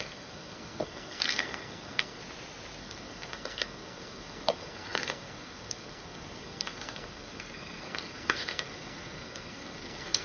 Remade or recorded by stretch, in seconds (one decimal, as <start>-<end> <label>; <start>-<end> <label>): 0.0-2.2 remade; 2.2-2.8 recorded; 2.8-10.2 remade